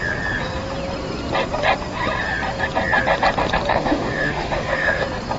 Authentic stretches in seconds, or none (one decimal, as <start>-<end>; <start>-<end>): 0.0-3.7; 5.0-5.4